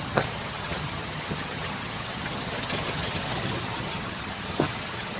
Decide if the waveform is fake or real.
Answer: fake